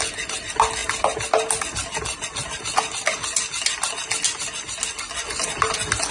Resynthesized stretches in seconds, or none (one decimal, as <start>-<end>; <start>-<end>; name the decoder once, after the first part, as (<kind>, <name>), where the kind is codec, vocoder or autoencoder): none